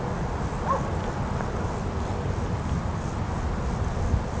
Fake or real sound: real